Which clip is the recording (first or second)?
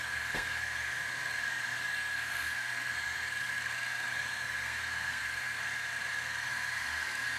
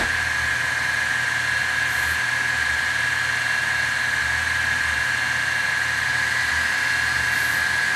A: second